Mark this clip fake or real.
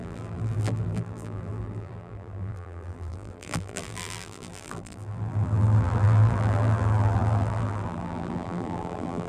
fake